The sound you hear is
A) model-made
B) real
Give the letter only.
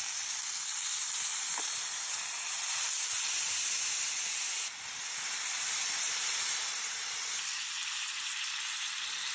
B